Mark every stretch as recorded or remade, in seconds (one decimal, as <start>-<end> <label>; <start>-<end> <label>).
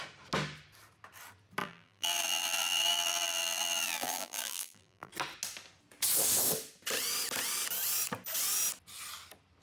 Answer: 0.0-1.6 recorded; 1.6-5.1 remade; 5.1-9.6 recorded